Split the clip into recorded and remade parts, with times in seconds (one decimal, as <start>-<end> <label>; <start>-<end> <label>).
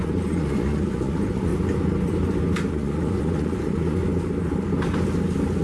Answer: 0.0-1.5 remade; 1.5-2.7 recorded; 2.7-4.0 remade; 4.0-5.6 recorded